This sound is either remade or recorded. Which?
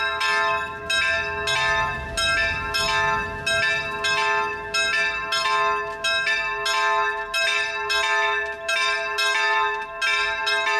recorded